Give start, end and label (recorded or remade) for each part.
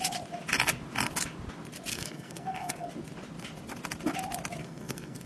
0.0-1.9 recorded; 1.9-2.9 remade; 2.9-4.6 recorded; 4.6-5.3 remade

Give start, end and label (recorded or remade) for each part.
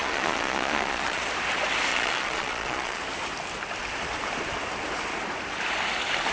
0.0-1.2 remade; 1.2-1.9 recorded; 1.9-3.0 remade; 3.0-6.3 recorded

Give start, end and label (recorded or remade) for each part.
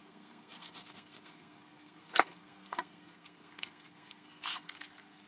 0.0-5.3 remade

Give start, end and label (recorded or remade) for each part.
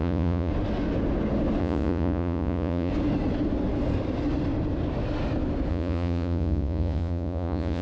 0.0-0.5 remade; 0.5-1.6 recorded; 1.6-2.9 remade; 2.9-5.7 recorded; 5.7-7.8 remade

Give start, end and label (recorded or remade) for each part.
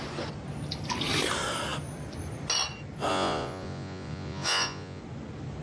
0.0-3.1 recorded; 3.1-5.0 remade; 5.0-5.6 recorded